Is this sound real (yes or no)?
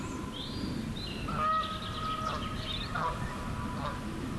yes